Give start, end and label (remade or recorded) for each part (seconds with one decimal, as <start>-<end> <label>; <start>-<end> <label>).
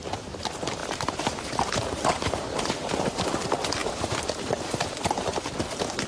0.0-0.8 recorded; 0.8-3.2 remade; 3.2-3.8 recorded; 3.8-4.3 remade; 4.3-6.1 recorded